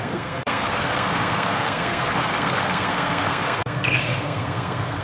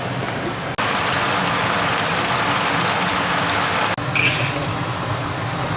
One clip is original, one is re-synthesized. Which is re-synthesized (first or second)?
first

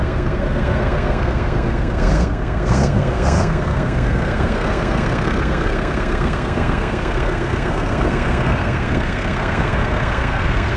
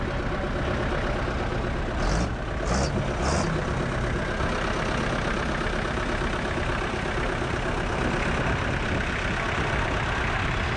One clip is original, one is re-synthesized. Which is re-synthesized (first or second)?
first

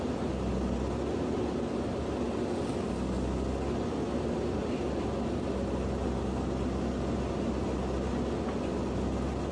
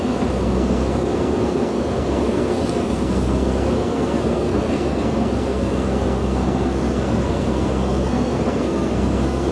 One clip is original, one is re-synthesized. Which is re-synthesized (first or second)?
second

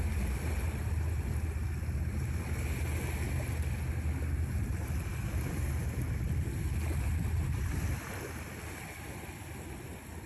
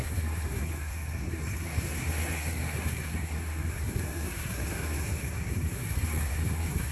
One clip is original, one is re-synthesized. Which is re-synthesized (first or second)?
second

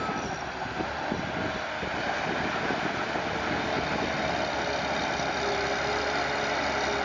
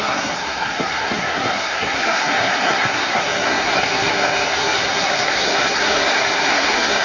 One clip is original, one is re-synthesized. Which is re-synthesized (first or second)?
second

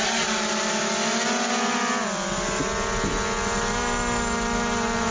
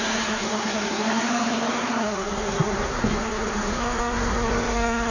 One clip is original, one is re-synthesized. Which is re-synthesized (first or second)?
second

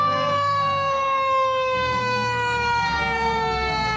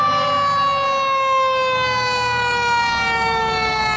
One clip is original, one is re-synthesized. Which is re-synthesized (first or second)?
first